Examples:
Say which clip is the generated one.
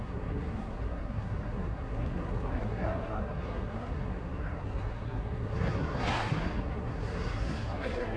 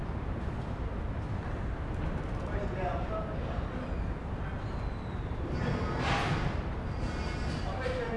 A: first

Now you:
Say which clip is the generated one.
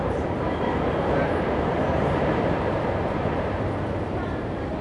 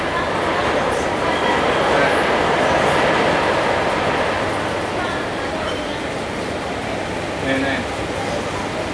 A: first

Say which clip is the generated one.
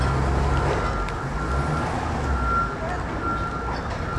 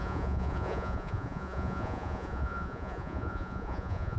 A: second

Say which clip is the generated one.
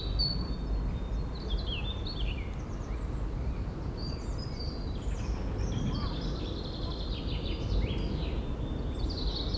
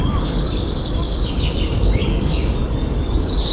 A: second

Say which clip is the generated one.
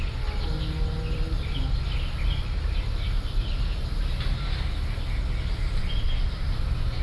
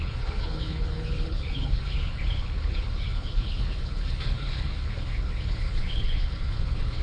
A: second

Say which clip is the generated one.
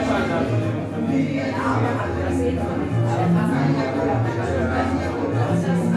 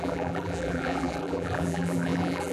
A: second